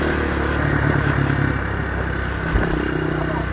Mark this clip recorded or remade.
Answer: recorded